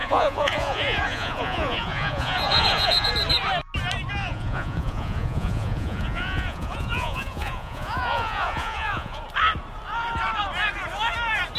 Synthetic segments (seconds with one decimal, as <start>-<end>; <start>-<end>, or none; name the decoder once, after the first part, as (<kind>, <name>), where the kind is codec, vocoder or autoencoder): 0.0-3.1 (vocoder, Vocos); 4.2-9.2